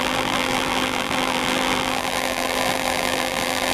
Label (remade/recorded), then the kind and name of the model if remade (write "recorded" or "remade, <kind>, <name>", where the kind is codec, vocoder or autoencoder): remade, vocoder, BigVGAN v2